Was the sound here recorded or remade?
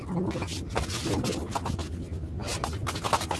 recorded